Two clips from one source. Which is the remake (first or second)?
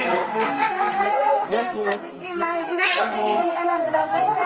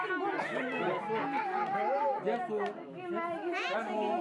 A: first